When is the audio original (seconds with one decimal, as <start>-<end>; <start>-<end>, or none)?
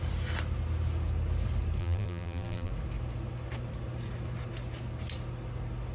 0.0-1.8; 2.7-5.9